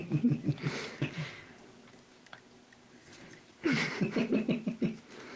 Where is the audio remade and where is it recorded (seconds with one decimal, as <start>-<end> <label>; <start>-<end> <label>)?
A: 0.0-1.2 remade; 1.2-3.0 recorded; 3.0-4.8 remade; 4.8-5.4 recorded